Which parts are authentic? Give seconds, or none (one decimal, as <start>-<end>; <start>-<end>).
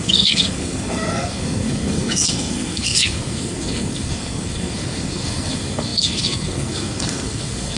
none